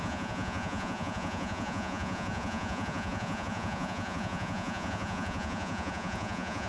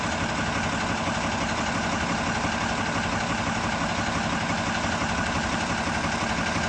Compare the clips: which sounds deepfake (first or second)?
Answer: first